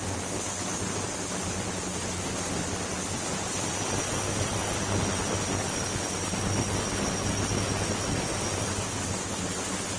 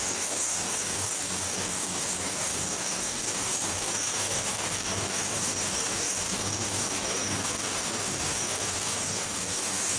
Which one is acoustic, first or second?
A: first